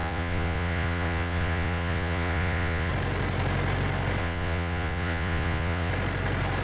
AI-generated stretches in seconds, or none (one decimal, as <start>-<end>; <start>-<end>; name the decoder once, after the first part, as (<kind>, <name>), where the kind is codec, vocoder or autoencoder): 0.0-2.9 (vocoder, Vocos); 4.2-5.9